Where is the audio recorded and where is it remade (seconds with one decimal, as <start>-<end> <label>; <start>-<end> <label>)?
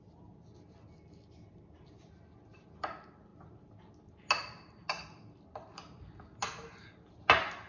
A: 0.0-7.7 recorded